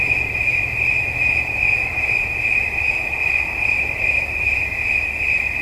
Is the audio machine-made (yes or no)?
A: yes